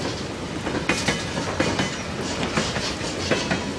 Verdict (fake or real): real